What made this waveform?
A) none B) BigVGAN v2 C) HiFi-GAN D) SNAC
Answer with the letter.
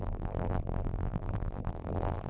B